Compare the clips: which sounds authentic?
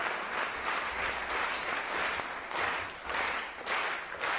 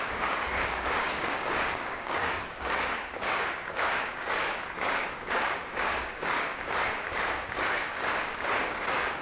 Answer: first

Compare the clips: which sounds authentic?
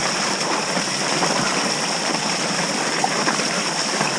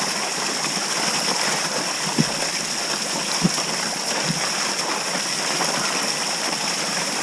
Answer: second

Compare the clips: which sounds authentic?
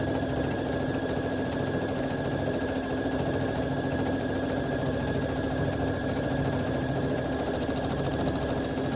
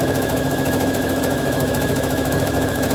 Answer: first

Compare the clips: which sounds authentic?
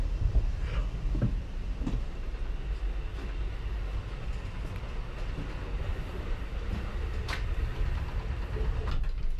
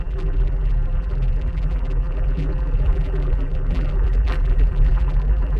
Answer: first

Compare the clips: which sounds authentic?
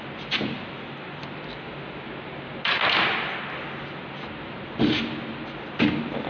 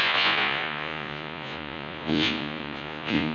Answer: first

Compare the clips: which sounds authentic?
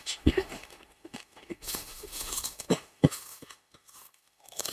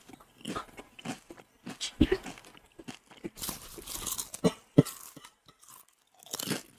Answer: second